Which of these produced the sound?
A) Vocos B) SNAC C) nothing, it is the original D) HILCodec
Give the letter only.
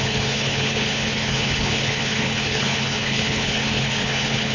D